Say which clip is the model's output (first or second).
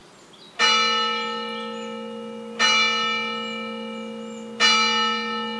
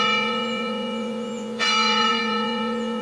second